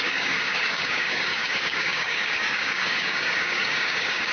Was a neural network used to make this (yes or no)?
yes